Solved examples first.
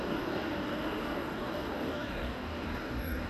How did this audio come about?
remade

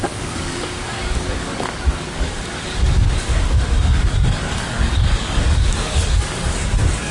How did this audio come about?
remade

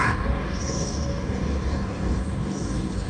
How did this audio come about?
remade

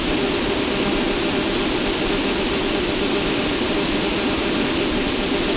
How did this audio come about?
recorded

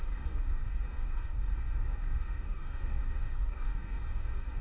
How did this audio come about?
remade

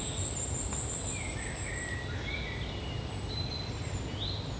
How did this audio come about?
recorded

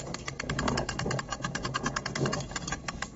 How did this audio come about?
remade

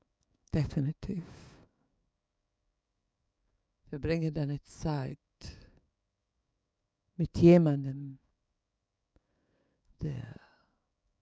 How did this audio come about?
remade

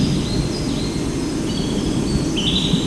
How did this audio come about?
recorded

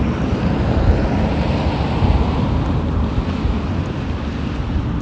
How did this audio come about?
recorded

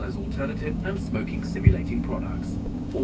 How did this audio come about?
remade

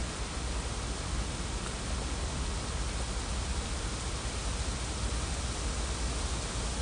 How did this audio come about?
recorded